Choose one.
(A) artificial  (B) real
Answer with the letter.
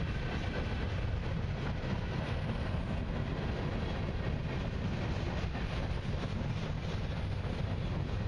B